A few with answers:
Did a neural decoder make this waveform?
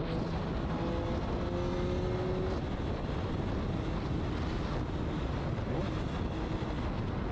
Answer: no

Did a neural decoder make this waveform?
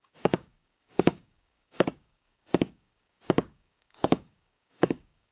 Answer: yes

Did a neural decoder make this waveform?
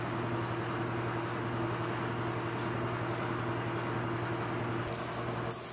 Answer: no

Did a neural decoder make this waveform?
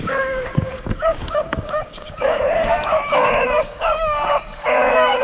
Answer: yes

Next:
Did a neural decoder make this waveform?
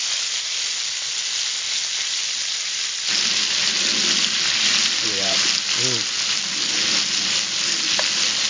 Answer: no